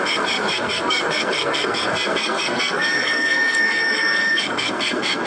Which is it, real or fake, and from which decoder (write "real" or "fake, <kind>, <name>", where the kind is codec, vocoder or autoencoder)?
fake, codec, SNAC